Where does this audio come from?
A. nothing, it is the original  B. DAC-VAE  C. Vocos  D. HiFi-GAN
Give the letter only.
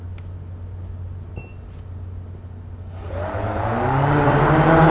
A